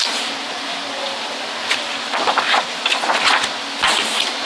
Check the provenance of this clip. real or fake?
real